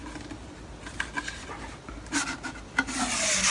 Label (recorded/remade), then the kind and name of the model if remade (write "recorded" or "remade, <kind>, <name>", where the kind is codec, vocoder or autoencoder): recorded